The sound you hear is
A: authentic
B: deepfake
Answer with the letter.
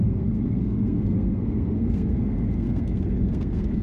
B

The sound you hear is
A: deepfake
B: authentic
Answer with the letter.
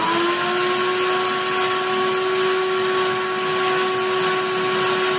B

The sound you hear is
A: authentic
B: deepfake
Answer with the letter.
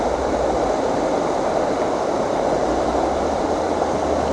A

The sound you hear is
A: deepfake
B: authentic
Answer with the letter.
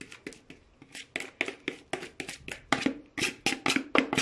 B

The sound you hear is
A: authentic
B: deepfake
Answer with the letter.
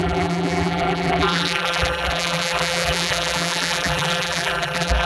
B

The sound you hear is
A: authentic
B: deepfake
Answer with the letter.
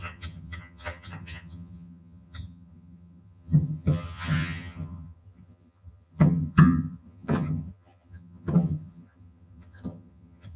B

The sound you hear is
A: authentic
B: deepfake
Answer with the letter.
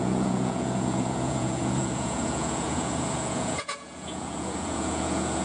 B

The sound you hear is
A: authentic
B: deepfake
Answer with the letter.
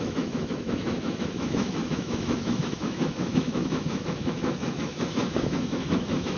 B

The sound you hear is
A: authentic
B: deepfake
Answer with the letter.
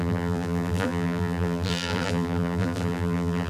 B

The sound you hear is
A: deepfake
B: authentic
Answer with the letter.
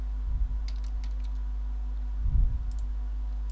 B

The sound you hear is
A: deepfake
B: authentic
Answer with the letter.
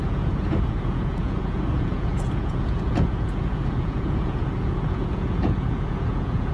A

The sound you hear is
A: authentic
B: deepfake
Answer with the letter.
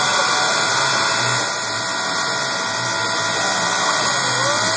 A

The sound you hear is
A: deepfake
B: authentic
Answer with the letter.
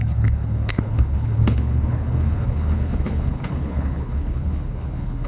A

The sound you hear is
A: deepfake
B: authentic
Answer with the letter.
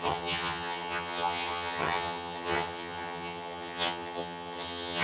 A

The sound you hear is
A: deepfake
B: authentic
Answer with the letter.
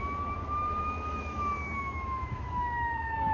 A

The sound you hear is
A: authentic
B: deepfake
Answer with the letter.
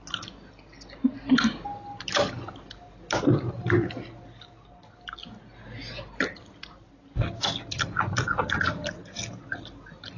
A